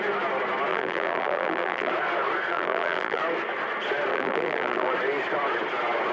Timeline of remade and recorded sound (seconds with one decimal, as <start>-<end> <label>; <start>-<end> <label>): 0.0-0.7 recorded; 0.7-1.9 remade; 1.9-2.5 recorded; 2.5-3.2 remade; 3.2-4.1 recorded; 4.1-4.9 remade; 4.9-6.1 recorded